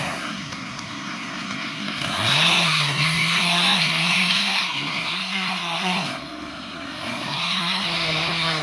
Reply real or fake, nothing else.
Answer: fake